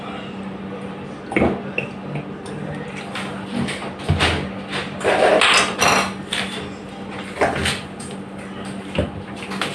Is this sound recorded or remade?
recorded